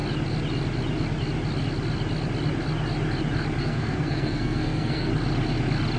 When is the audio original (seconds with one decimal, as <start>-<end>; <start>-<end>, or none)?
0.0-3.6; 5.1-6.0